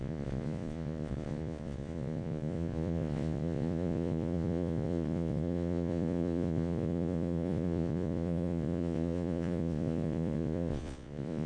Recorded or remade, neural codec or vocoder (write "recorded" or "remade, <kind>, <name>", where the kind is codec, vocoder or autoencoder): remade, vocoder, Vocos